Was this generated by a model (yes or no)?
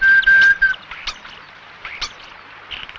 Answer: no